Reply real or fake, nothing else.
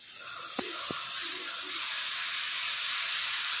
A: real